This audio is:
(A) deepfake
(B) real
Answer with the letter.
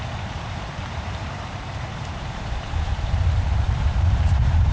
A